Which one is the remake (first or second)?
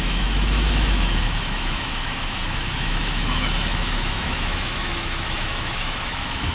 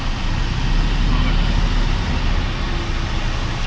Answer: first